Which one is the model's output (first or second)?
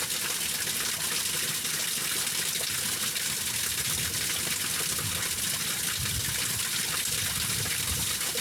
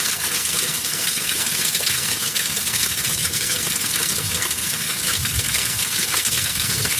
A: second